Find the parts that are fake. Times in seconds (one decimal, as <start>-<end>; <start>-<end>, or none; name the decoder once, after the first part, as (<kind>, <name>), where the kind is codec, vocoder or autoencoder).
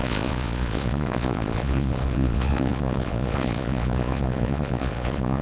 0.0-5.4 (vocoder, Vocos)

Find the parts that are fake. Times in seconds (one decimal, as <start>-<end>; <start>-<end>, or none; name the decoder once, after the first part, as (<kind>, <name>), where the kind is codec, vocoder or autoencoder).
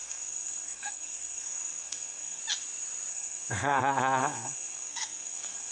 0.0-2.4 (codec, SNAC); 3.1-3.8; 4.2-5.7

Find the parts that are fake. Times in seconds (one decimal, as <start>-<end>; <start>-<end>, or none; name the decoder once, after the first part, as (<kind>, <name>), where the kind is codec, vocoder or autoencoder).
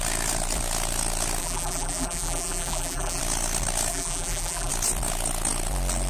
1.4-3.2 (vocoder, BigVGAN v2); 3.9-4.7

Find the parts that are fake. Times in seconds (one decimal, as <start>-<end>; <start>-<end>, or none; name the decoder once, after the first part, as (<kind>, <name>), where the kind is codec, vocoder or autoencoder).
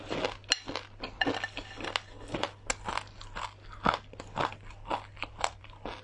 none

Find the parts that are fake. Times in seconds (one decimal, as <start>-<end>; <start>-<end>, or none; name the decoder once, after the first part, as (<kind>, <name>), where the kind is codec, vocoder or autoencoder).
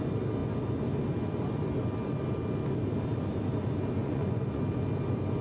4.0-4.6 (vocoder, Vocos)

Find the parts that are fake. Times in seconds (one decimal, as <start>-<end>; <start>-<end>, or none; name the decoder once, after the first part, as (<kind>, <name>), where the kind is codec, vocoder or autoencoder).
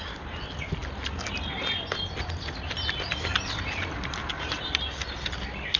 none